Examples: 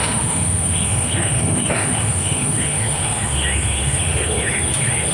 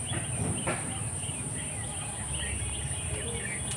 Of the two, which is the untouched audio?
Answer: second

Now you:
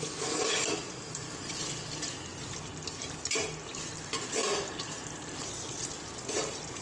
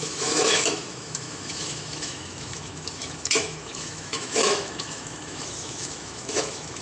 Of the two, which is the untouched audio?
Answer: first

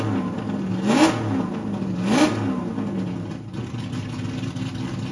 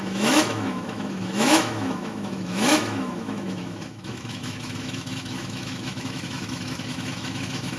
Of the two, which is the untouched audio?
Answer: first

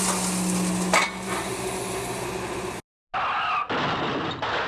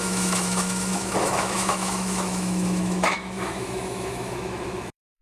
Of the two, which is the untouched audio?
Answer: first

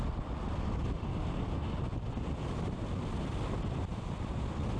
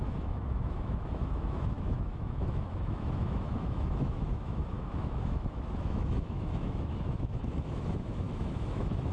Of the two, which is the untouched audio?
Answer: first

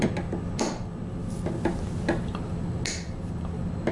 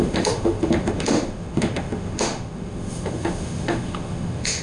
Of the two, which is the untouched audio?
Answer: first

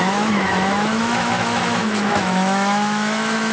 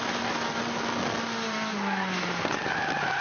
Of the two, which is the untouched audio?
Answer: second